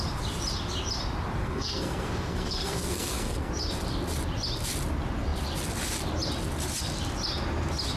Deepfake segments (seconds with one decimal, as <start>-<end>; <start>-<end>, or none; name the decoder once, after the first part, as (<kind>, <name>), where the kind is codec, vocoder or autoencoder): 1.4-3.5 (codec, SNAC)